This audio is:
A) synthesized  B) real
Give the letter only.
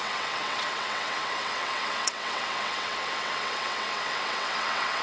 A